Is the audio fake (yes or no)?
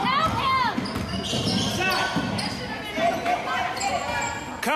no